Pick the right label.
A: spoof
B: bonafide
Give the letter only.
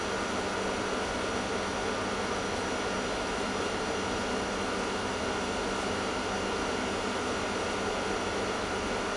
B